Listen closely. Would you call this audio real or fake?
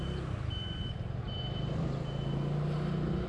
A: real